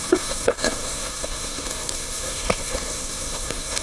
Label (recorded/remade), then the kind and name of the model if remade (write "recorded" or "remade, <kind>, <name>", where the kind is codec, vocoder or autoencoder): remade, codec, SNAC